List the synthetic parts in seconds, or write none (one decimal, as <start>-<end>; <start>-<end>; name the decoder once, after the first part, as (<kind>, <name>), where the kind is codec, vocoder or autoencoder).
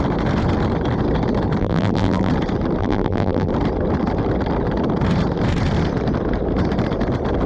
1.6-2.3 (vocoder, BigVGAN v2); 2.8-3.5